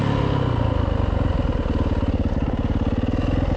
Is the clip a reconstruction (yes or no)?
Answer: no